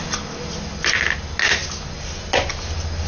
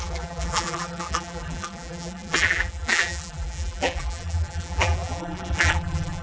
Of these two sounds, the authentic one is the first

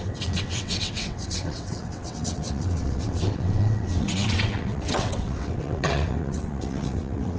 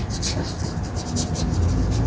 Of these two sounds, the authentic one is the second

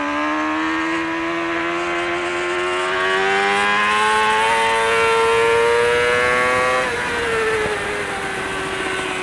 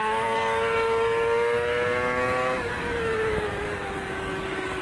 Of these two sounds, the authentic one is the first